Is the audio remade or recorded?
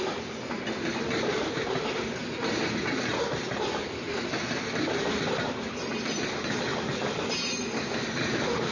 recorded